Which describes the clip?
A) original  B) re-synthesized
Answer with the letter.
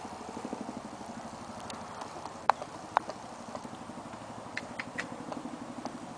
A